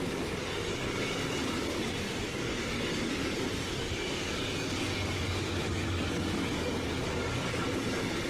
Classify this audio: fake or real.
fake